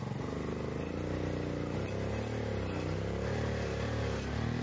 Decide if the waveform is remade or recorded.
recorded